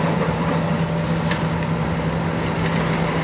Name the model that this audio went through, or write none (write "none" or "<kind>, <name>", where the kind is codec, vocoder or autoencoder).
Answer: none